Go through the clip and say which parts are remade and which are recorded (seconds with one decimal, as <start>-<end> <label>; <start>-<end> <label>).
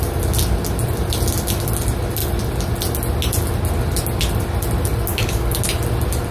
0.0-5.1 recorded; 5.1-5.6 remade; 5.6-6.3 recorded